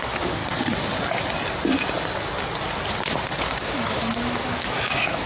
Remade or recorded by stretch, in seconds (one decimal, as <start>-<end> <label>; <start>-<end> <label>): 0.0-0.4 remade; 0.4-3.6 recorded; 3.6-5.3 remade